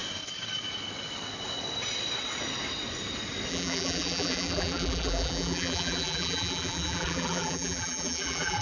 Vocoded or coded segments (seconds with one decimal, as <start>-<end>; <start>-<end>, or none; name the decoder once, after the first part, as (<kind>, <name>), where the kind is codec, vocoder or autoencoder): 3.5-8.6 (vocoder, BigVGAN v2)